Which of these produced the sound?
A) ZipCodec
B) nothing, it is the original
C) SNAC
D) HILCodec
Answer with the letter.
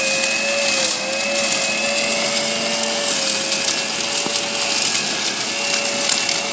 B